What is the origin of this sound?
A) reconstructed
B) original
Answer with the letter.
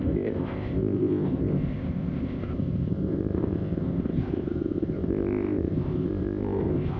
A